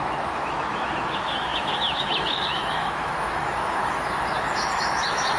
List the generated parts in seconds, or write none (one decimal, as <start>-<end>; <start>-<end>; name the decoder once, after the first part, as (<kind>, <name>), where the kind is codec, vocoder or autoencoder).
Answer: 0.0-5.4 (autoencoder, DAC-VAE)